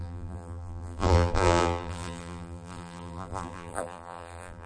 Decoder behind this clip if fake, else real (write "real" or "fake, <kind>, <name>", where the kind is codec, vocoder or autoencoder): fake, vocoder, BigVGAN v2